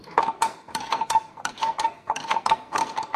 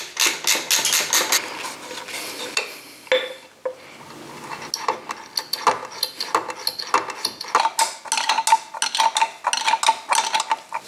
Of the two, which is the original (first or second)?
second